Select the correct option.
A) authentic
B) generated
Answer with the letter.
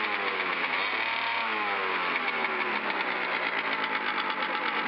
A